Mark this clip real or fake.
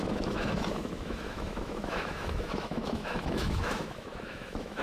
fake